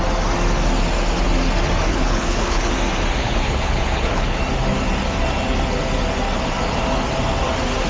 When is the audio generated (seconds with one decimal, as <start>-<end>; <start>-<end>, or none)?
1.9-2.7; 3.2-4.4

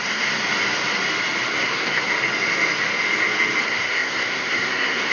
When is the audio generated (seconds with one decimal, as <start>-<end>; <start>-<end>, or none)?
0.0-0.4; 1.5-2.1; 3.6-5.1